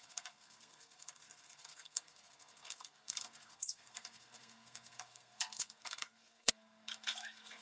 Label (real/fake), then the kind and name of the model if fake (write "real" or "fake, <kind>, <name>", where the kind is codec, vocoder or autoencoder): fake, codec, SNAC